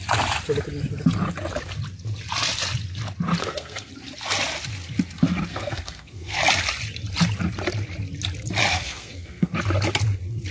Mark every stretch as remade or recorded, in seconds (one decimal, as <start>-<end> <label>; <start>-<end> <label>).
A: 0.0-3.4 recorded; 3.4-3.9 remade; 3.9-5.5 recorded; 5.5-6.4 remade; 6.4-8.7 recorded; 8.7-9.5 remade; 9.5-10.5 recorded